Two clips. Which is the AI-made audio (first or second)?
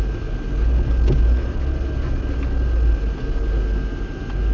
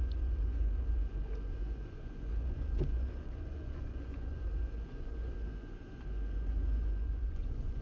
second